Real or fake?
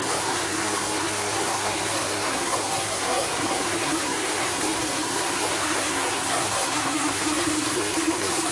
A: fake